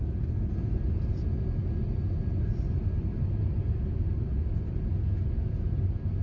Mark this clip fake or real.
real